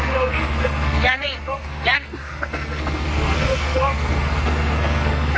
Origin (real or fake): fake